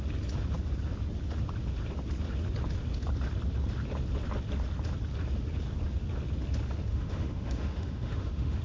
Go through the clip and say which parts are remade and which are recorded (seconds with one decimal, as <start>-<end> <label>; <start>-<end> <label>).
0.0-6.9 recorded; 6.9-8.6 remade